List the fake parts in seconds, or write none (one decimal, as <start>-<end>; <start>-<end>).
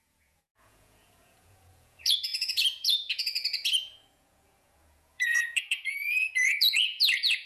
0.0-7.5